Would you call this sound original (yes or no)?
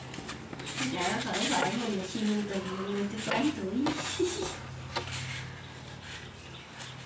yes